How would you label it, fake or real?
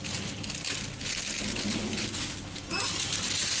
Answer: real